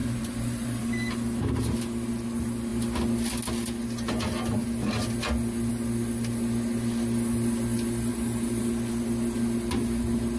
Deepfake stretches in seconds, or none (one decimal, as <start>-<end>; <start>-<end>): 0.0-0.8; 8.1-8.6